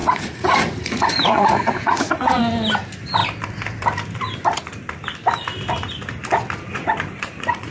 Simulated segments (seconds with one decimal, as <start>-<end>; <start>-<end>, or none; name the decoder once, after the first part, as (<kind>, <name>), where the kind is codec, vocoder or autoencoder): 0.0-2.4 (vocoder, Vocos); 6.6-7.7